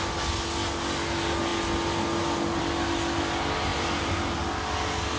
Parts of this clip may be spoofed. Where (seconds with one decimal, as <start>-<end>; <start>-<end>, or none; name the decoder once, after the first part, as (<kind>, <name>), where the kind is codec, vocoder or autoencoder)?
none